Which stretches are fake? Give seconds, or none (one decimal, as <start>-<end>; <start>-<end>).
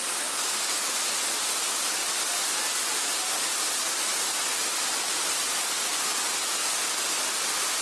none